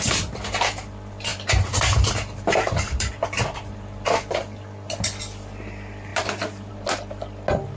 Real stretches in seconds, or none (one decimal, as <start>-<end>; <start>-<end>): 0.0-1.3; 4.4-6.1; 6.7-7.8